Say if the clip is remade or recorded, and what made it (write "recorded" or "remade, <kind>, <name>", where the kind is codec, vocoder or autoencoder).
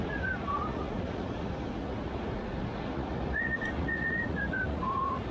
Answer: remade, vocoder, Vocos